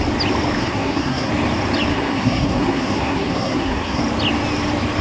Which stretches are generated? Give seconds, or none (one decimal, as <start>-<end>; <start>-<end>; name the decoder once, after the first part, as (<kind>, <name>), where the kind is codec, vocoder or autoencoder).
0.6-1.3 (codec, SNAC); 1.9-4.0